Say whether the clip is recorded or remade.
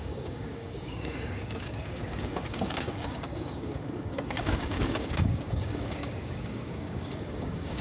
remade